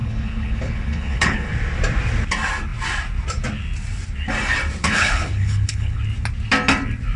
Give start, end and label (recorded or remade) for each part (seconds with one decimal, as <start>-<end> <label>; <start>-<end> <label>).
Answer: 0.0-1.5 remade; 1.5-4.8 recorded; 4.8-6.0 remade; 6.0-7.2 recorded

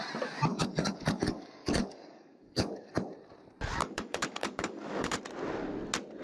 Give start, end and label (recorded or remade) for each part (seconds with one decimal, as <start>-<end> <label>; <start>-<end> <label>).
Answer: 0.0-0.5 recorded; 0.5-2.9 remade; 2.9-3.8 recorded; 3.8-5.2 remade; 5.2-6.2 recorded